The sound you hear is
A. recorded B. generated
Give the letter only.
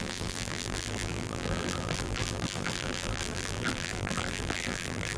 B